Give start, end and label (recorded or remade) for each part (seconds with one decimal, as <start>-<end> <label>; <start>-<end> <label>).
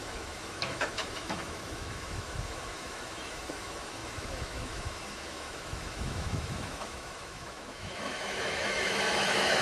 0.0-9.6 remade